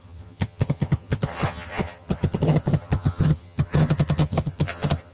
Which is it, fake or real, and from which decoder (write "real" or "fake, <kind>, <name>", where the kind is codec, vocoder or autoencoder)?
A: fake, vocoder, HiFi-GAN